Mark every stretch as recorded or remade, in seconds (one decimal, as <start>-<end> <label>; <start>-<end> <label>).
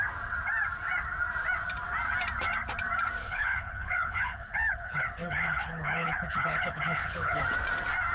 0.0-3.2 recorded; 3.2-7.4 remade; 7.4-8.1 recorded